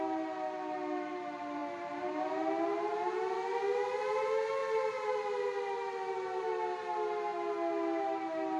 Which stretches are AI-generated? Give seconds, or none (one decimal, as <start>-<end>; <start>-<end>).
none